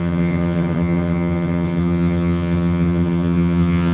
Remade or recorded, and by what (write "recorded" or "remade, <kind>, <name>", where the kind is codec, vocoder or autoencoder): remade, vocoder, HiFi-GAN